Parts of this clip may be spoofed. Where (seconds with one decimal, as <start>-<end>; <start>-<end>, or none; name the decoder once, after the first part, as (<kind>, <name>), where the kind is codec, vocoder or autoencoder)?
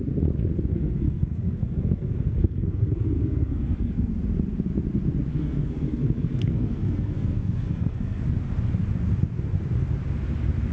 0.7-4.1 (codec, SNAC); 5.3-8.2